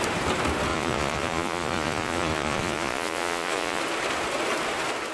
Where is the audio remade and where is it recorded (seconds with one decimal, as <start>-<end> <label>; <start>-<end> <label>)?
0.0-0.7 recorded; 0.7-3.8 remade; 3.8-5.1 recorded